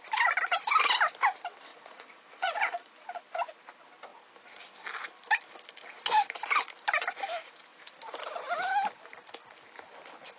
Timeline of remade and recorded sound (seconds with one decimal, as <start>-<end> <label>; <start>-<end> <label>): 0.0-1.7 recorded; 1.7-2.9 remade; 2.9-10.4 recorded